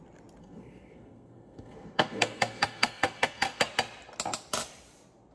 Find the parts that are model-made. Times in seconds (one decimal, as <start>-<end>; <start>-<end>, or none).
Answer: 0.4-3.6